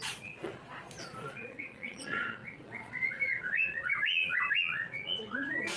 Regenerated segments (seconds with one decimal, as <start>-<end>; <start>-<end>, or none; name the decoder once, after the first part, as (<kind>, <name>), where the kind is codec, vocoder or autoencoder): 0.0-5.8 (vocoder, Vocos)